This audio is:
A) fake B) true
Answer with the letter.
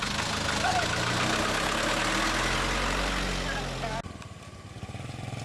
B